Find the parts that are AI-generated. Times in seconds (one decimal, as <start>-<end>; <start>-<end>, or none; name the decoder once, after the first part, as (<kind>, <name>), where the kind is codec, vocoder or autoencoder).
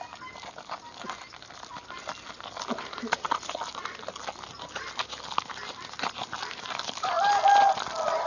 none